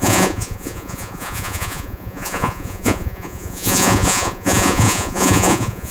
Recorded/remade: remade